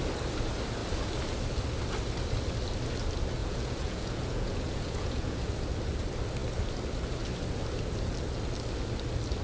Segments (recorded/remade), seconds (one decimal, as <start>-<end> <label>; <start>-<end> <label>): 0.0-3.4 recorded; 3.4-5.5 remade; 5.5-9.4 recorded